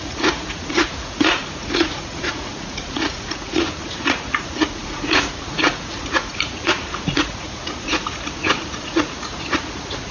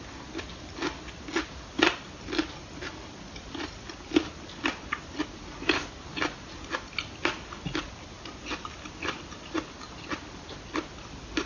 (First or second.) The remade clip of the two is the first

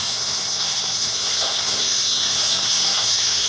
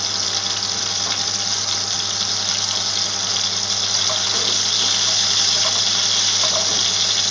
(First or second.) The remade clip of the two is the first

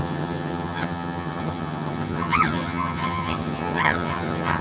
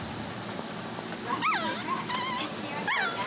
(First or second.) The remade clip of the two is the first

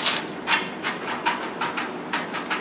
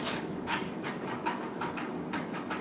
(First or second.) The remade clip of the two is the second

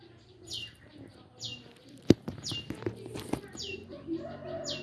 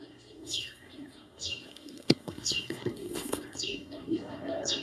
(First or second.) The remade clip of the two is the second